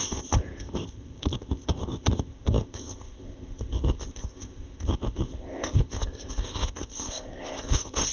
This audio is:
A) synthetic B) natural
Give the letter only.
A